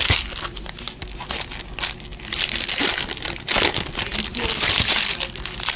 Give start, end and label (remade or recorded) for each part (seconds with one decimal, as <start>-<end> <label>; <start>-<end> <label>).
0.0-5.8 recorded